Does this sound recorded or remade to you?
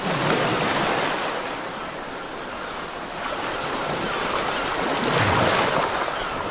recorded